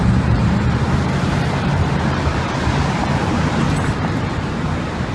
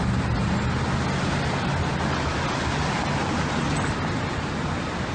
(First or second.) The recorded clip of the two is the second